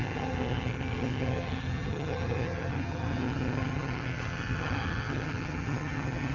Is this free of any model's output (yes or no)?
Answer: no